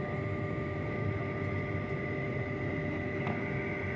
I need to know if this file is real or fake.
real